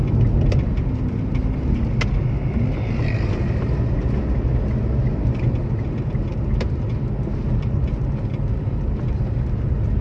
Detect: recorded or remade recorded